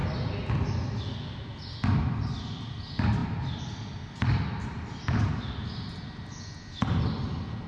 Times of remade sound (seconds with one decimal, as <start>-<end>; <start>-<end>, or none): none

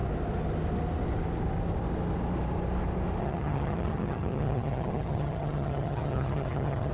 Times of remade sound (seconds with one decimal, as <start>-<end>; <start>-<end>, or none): 3.2-6.9

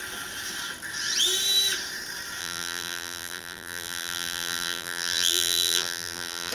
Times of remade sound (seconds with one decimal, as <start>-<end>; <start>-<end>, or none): 2.4-6.5

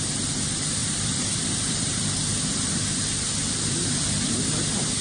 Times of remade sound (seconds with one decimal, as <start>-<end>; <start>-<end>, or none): 0.8-3.7

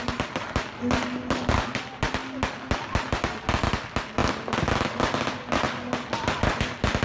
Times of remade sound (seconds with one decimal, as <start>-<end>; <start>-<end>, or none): none

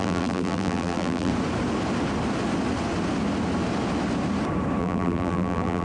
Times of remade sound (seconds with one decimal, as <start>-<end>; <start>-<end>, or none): 0.0-1.3; 4.8-5.8

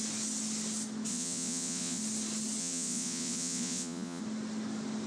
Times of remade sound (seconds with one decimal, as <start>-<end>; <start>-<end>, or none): 1.1-2.0; 2.6-4.2